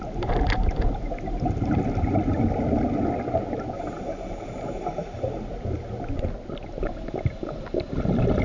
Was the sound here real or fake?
real